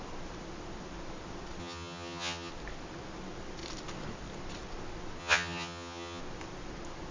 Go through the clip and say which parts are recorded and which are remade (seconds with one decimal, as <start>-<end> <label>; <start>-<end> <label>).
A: 0.0-1.6 recorded; 1.6-2.5 remade; 2.5-5.2 recorded; 5.2-6.2 remade; 6.2-7.1 recorded